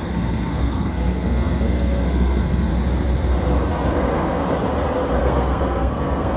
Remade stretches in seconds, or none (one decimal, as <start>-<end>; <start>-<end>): 0.0-2.7; 3.7-4.4; 5.2-6.4